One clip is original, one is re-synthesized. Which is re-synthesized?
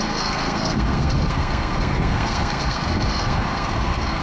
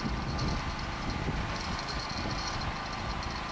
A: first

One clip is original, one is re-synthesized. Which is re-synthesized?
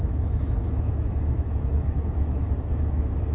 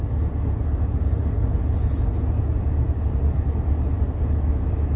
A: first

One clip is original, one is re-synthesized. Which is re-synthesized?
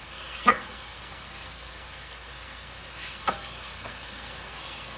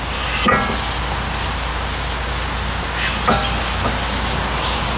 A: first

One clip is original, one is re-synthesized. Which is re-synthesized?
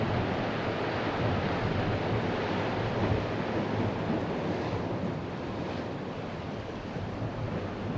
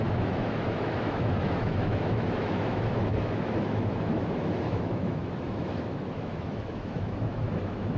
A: second